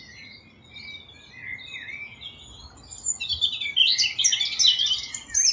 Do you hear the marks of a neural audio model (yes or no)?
no